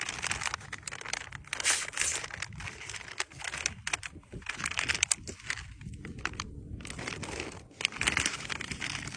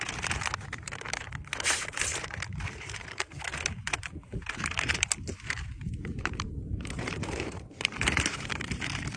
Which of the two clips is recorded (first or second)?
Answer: first